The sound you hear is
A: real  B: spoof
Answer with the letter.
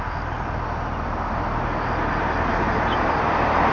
A